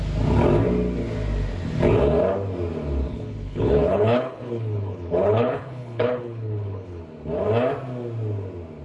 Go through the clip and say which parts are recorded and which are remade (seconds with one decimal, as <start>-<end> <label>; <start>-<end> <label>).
0.0-3.1 recorded; 3.1-7.0 remade; 7.0-8.8 recorded